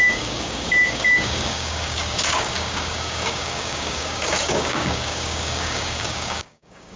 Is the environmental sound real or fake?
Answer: fake